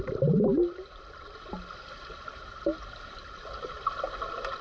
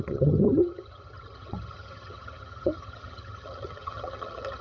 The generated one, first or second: second